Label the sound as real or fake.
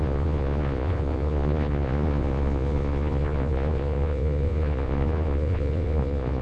fake